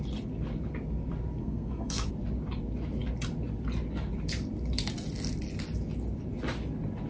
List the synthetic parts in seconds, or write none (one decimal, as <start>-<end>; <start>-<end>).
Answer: 1.4-2.1